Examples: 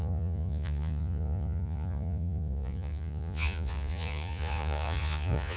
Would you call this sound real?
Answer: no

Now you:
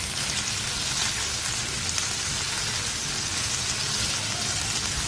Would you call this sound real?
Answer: yes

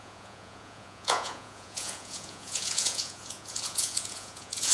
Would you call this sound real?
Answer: no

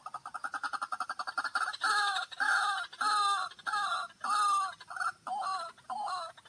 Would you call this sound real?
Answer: yes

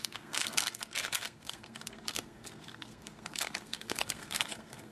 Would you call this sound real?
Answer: no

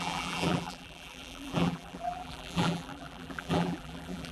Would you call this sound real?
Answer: no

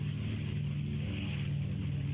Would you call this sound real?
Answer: yes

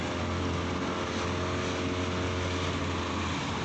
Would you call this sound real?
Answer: yes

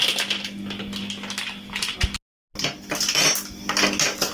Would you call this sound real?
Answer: yes